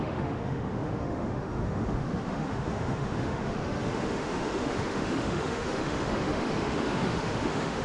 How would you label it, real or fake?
fake